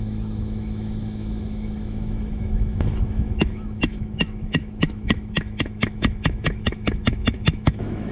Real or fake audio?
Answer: fake